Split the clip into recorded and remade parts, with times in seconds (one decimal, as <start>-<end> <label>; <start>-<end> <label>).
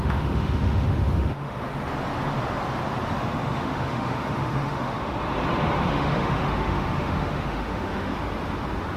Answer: 0.0-1.7 remade; 1.7-3.2 recorded; 3.2-5.1 remade; 5.1-5.9 recorded; 5.9-8.1 remade; 8.1-9.0 recorded